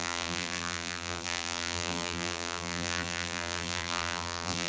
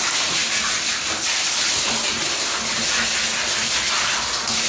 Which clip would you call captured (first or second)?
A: second